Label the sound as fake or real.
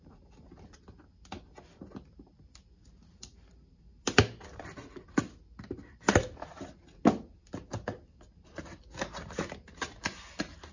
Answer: real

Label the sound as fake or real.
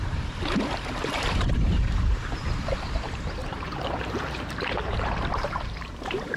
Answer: fake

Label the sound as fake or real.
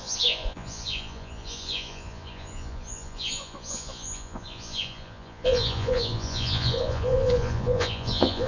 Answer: fake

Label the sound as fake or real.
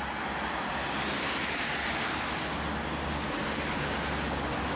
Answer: real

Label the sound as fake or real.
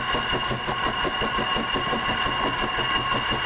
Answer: real